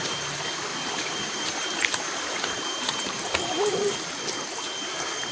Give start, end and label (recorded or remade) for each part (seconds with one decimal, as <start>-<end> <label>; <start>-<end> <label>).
0.0-0.7 recorded; 0.7-3.9 remade; 3.9-5.3 recorded